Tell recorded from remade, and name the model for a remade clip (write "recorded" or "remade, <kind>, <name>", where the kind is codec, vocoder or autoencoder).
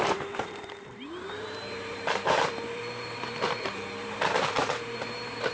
remade, vocoder, BigVGAN v2